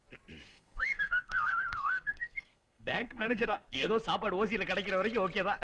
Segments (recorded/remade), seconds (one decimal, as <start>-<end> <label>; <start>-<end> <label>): 0.0-0.5 recorded; 0.5-3.9 remade; 3.9-5.6 recorded